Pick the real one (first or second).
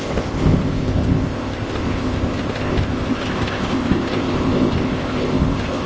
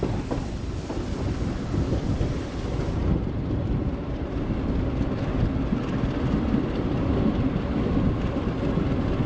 second